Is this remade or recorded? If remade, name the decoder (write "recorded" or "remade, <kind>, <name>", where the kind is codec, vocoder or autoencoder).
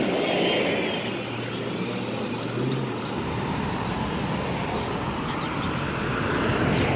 recorded